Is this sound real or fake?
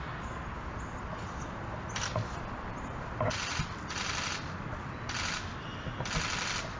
real